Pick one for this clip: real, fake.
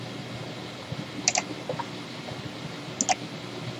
real